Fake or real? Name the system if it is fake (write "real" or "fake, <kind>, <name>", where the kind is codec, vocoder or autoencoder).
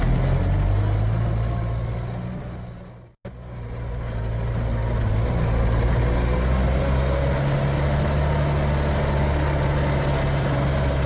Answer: real